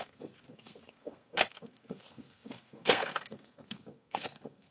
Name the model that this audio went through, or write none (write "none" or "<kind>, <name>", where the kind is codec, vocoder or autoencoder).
codec, SNAC